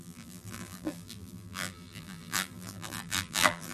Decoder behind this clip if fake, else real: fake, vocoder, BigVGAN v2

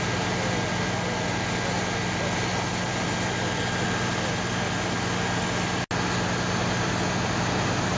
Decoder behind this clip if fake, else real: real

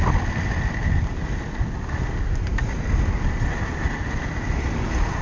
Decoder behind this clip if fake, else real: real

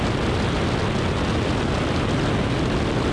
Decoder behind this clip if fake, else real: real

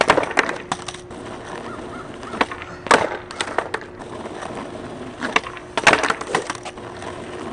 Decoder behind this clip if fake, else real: real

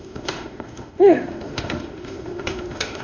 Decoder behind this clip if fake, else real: fake, autoencoder, DAC-VAE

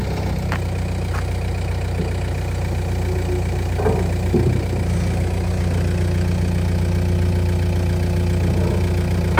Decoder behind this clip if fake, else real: real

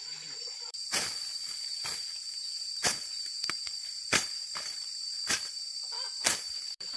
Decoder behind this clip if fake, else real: fake, vocoder, BigVGAN v2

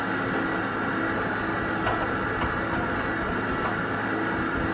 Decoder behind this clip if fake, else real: real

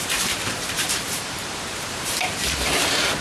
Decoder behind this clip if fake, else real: fake, vocoder, BigVGAN v2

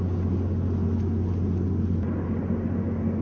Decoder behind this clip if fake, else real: real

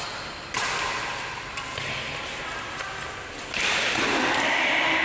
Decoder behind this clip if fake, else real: real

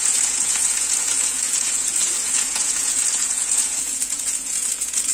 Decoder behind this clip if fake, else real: fake, vocoder, Vocos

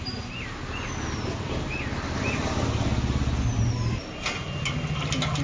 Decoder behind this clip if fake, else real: real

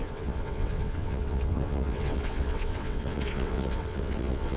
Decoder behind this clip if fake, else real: fake, vocoder, WaveNeXt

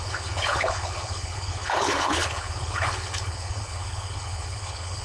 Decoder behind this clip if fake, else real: fake, codec, HILCodec